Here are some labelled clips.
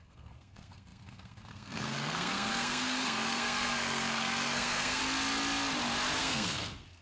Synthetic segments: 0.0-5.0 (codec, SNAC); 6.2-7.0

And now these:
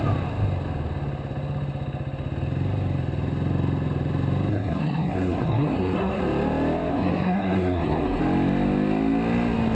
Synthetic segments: 4.5-6.2 (codec, SNAC); 6.9-8.2

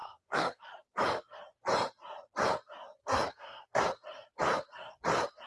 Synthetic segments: 0.0-0.6 (codec, SNAC); 3.0-3.8

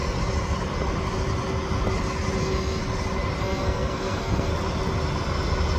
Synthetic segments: 2.4-2.8 (codec, SNAC); 3.4-4.5

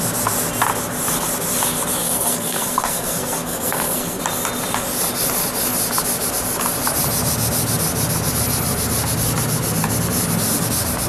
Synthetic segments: 2.0-4.2 (codec, SNAC)

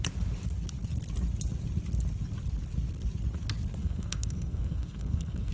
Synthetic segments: 3.8-5.5 (codec, SNAC)

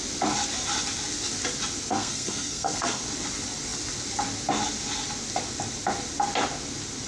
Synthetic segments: 1.9-3.0 (codec, SNAC)

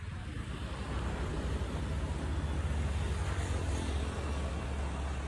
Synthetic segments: none